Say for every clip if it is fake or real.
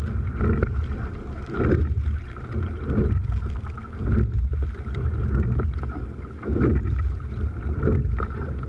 real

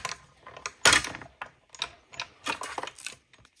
real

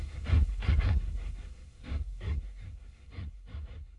fake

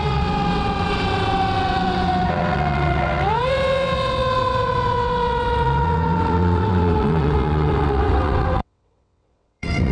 fake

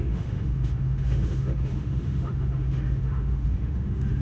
fake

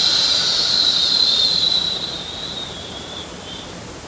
real